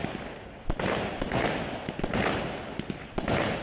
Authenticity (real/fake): real